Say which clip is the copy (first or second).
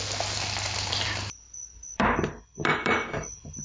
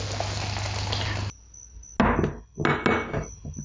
first